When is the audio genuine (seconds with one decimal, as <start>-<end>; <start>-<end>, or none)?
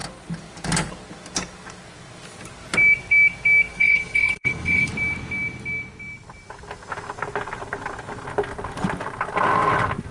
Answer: 0.0-3.7; 4.9-10.1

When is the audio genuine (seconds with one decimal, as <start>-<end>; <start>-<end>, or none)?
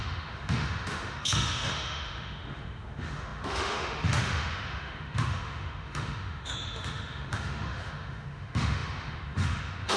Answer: none